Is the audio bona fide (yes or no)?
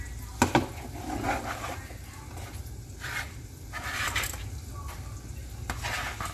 yes